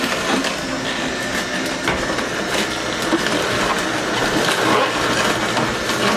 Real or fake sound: real